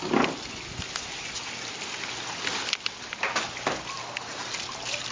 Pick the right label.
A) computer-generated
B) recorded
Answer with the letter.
B